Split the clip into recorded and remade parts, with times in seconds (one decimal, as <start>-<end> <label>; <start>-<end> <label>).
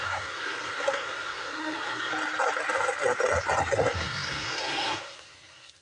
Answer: 0.0-2.1 remade; 2.1-3.6 recorded; 3.6-5.8 remade